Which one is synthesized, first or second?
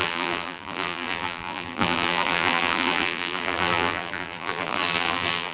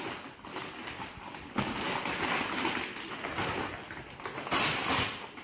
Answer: first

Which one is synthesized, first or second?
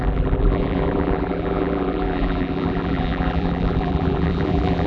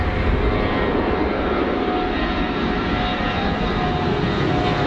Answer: first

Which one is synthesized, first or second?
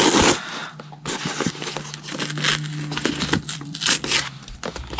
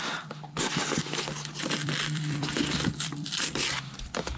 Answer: second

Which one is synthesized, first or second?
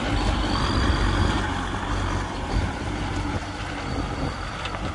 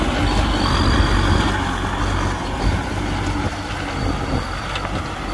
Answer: first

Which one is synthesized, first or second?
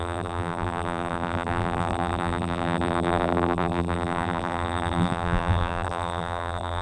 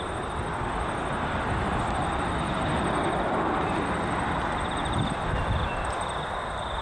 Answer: first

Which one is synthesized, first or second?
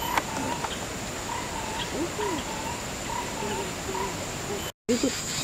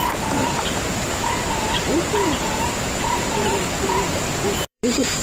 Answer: second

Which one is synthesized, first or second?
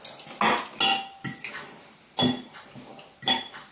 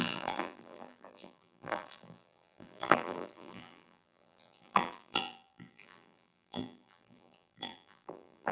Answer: second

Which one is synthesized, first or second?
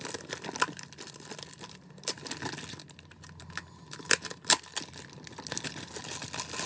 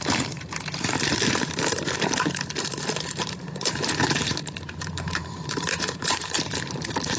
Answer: second